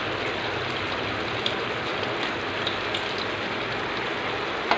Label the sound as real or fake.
real